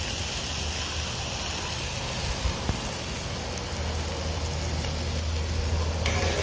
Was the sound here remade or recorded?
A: recorded